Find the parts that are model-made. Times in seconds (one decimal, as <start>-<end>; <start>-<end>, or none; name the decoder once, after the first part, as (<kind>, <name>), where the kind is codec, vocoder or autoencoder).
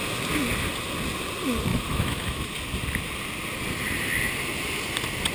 1.7-2.5 (autoencoder, DAC-VAE)